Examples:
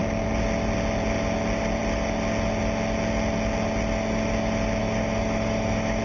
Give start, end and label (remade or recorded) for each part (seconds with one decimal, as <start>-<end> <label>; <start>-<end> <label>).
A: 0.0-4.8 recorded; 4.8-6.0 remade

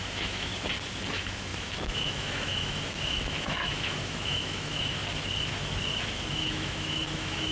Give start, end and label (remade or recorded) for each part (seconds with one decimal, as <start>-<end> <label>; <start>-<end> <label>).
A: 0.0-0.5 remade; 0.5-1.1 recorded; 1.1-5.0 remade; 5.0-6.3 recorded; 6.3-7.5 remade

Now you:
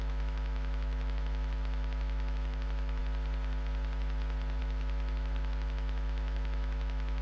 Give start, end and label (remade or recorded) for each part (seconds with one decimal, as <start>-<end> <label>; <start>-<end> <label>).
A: 0.0-3.0 remade; 3.0-4.6 recorded; 4.6-7.2 remade

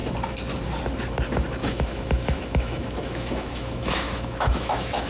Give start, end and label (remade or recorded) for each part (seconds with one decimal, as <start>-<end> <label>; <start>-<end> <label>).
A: 0.0-1.6 recorded; 1.6-5.1 remade

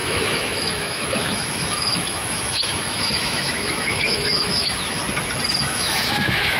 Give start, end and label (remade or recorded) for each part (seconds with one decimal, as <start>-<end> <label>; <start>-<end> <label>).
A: 0.0-5.0 remade; 5.0-5.6 recorded; 5.6-6.6 remade

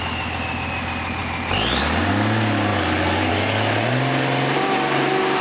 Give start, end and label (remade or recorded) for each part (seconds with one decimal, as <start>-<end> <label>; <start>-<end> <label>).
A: 0.0-5.4 recorded

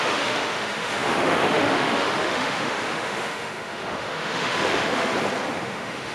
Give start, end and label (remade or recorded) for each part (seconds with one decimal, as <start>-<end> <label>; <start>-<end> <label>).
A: 0.0-5.1 remade; 5.1-5.6 recorded; 5.6-6.1 remade